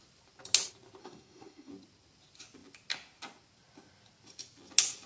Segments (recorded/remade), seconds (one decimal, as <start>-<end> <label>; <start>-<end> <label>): 0.0-1.0 recorded; 1.0-1.7 remade; 1.7-5.1 recorded